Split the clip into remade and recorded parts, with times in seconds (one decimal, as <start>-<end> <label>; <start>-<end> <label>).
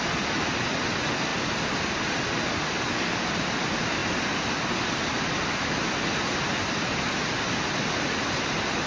0.0-8.9 recorded